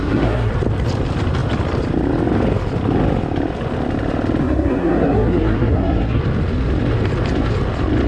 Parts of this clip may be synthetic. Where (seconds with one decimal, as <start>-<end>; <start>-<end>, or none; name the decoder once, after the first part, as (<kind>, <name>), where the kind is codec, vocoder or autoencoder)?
0.0-0.5 (codec, SNAC); 4.4-6.2